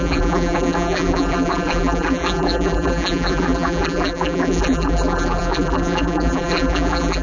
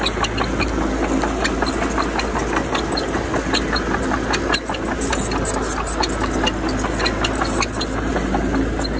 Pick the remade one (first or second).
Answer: first